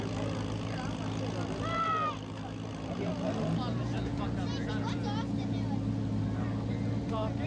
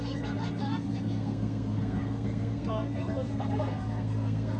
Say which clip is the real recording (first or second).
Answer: first